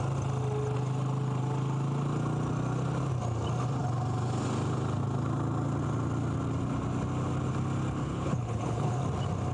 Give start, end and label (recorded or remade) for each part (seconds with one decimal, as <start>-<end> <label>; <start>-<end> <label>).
0.0-8.0 recorded; 8.0-9.0 remade; 9.0-9.5 recorded